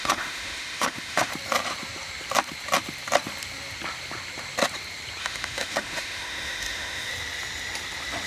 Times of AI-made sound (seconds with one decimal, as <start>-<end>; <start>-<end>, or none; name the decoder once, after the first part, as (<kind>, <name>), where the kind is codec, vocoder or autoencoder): 0.0-1.3 (autoencoder, DAC-VAE); 5.2-7.1